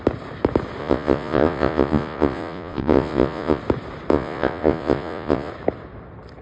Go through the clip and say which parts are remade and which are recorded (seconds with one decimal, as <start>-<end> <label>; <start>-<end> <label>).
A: 0.0-0.8 recorded; 0.8-3.6 remade; 3.6-4.1 recorded; 4.1-5.5 remade; 5.5-6.4 recorded